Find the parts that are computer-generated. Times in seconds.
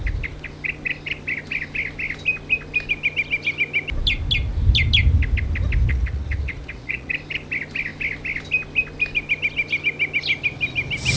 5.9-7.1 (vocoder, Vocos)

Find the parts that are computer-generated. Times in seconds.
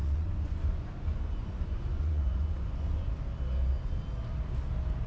0.0-3.1 (vocoder, Vocos)